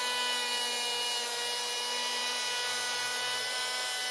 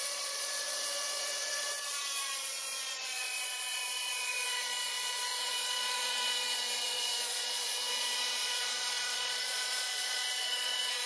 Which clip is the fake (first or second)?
second